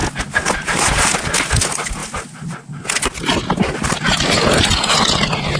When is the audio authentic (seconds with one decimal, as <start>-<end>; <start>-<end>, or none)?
0.0-5.6